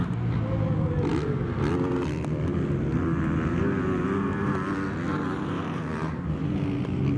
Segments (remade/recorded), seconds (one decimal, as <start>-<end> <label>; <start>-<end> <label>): 0.0-5.1 recorded; 5.1-6.2 remade; 6.2-7.2 recorded

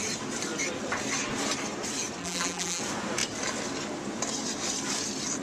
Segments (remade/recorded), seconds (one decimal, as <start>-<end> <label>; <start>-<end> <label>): 0.0-2.2 recorded; 2.2-2.8 remade; 2.8-5.4 recorded

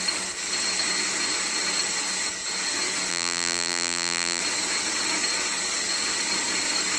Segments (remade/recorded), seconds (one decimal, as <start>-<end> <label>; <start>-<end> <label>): 0.0-3.1 recorded; 3.1-4.4 remade; 4.4-7.0 recorded

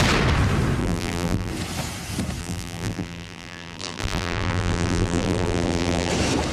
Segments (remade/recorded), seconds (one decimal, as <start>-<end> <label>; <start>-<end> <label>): 0.0-0.8 recorded; 0.8-1.5 remade; 1.5-2.4 recorded; 2.4-6.1 remade; 6.1-6.5 recorded

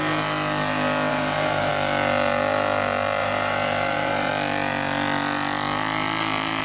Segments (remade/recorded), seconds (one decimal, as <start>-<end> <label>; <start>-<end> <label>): 0.0-1.1 recorded; 1.1-1.7 remade; 1.7-3.2 recorded; 3.2-4.3 remade; 4.3-6.6 recorded